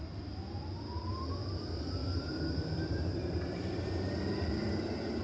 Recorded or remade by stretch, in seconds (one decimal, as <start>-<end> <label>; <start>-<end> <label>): 0.0-1.4 recorded; 1.4-4.5 remade; 4.5-5.2 recorded